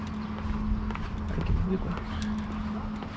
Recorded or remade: recorded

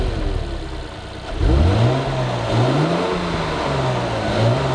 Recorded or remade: recorded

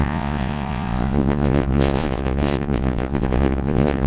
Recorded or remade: remade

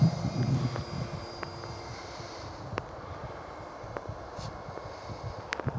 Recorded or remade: recorded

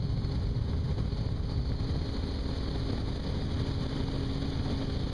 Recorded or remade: recorded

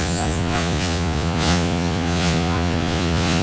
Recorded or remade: remade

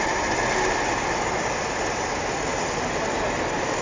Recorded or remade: recorded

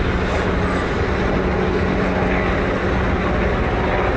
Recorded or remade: recorded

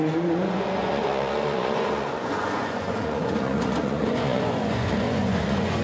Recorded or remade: remade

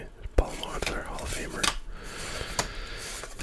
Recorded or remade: recorded